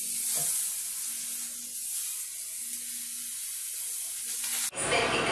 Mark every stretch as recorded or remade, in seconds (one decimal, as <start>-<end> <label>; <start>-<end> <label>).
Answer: 0.0-5.3 recorded